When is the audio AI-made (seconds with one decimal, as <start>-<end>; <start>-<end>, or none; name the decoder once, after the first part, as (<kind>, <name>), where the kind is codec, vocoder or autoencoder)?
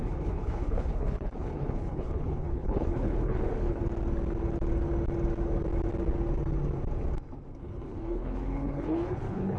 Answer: 0.0-3.8 (codec, HILCodec); 7.6-9.6